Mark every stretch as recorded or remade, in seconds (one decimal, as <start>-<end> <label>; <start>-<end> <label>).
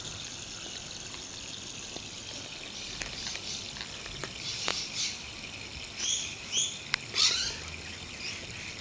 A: 0.0-8.8 recorded